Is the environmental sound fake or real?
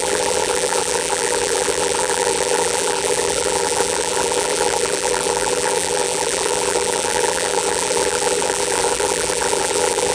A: fake